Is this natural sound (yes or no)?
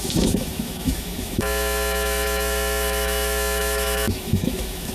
no